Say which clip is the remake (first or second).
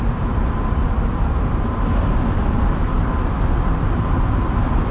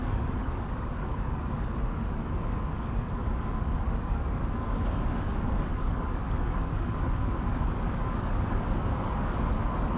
second